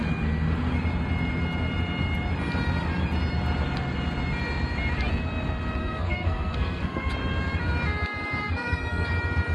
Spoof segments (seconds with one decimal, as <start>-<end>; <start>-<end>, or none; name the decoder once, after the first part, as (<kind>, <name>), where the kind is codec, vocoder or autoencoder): 5.8-7.1 (codec, SNAC); 8.4-9.1